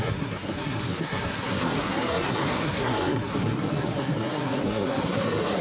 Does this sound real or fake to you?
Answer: fake